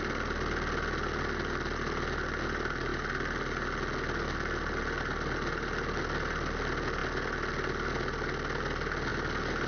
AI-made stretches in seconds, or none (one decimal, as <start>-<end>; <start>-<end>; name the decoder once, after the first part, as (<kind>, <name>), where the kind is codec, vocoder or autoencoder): none